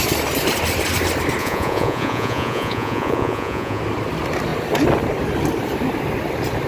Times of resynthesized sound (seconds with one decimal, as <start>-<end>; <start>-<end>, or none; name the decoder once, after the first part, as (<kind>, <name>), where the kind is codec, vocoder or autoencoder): 1.4-3.8 (vocoder, Vocos)